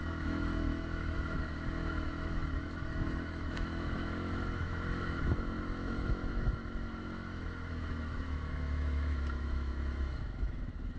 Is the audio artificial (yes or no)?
yes